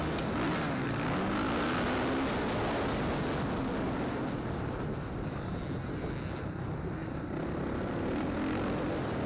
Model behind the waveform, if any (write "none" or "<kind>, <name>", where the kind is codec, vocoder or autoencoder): none